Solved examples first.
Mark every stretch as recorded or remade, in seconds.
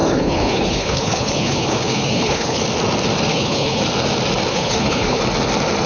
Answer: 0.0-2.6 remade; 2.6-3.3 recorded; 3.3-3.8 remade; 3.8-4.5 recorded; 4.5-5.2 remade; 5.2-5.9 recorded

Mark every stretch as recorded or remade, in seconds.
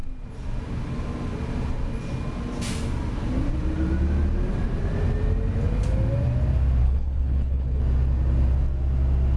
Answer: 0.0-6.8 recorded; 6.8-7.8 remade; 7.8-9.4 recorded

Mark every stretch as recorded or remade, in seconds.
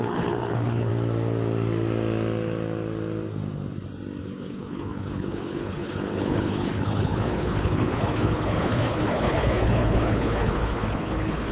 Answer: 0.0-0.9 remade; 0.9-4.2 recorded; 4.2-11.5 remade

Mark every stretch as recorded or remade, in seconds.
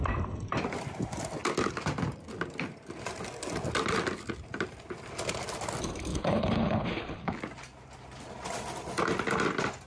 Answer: 0.0-6.1 recorded; 6.1-7.4 remade; 7.4-9.9 recorded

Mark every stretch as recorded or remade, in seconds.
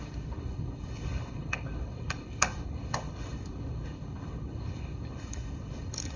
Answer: 0.0-6.2 remade